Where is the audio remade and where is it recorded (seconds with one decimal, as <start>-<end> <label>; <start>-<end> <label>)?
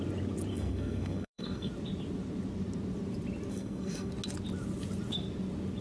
0.0-0.5 recorded; 0.5-1.7 remade; 1.7-3.5 recorded; 3.5-4.1 remade; 4.1-5.8 recorded